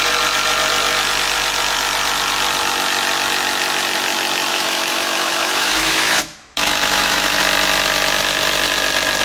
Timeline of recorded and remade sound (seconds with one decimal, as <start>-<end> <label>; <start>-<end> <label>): 0.0-4.5 recorded; 4.5-7.4 remade; 7.4-9.2 recorded